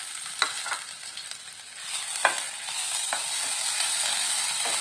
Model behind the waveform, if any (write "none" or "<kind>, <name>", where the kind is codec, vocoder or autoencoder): none